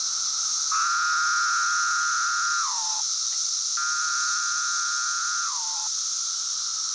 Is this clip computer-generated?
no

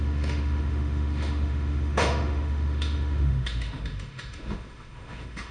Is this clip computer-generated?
yes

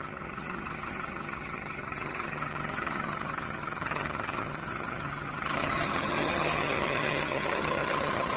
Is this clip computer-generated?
yes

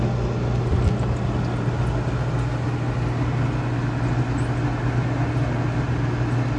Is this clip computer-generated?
no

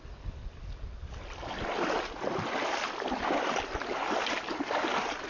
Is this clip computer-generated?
no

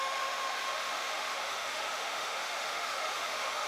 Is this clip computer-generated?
yes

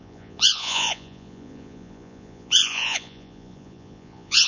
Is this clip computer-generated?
yes